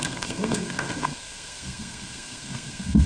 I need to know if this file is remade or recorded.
remade